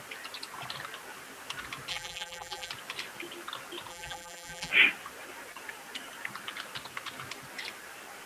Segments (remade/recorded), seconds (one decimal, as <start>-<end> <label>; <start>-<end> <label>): 0.0-1.9 recorded; 1.9-2.7 remade; 2.7-3.9 recorded; 3.9-4.7 remade; 4.7-8.3 recorded